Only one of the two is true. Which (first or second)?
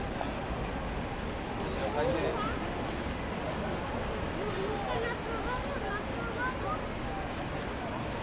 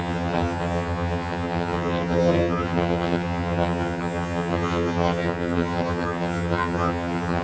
first